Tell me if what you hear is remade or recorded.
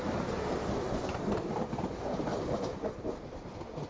recorded